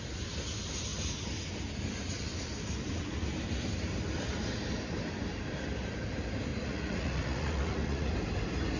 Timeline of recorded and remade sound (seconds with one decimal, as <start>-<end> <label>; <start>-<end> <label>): 0.0-6.5 recorded; 6.5-8.1 remade; 8.1-8.8 recorded